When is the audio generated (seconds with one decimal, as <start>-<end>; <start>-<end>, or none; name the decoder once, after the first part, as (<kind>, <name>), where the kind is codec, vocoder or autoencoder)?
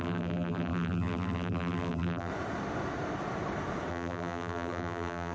0.0-2.3 (vocoder, BigVGAN v2); 3.9-5.3